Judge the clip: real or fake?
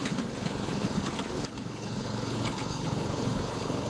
fake